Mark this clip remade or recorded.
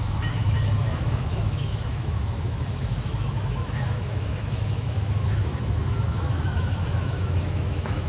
remade